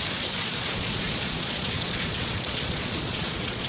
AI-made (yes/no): yes